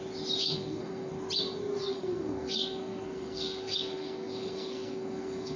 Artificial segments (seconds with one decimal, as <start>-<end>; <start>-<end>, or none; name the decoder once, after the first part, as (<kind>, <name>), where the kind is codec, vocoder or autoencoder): 0.4-1.1 (codec, SNAC); 1.8-5.6